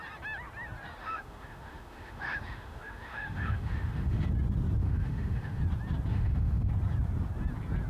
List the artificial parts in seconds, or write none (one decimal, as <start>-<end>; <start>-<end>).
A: 1.0-4.3; 4.8-5.6; 6.1-6.7